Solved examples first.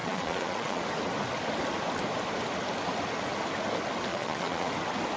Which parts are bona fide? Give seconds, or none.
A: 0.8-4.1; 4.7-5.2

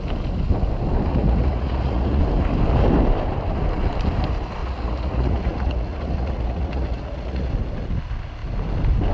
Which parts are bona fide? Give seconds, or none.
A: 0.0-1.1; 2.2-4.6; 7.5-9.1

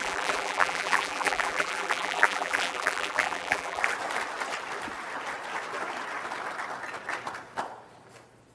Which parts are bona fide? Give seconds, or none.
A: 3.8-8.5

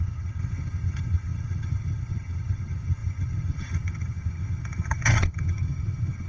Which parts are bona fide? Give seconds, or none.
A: none

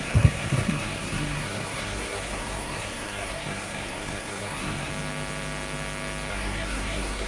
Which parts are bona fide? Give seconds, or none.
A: 4.9-6.3